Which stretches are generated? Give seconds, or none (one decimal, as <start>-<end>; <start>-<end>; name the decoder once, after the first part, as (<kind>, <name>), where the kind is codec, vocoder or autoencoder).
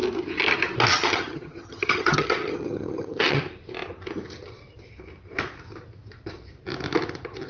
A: 0.9-3.4 (vocoder, HiFi-GAN)